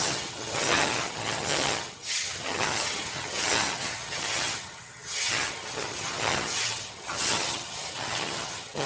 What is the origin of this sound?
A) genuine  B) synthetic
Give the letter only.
B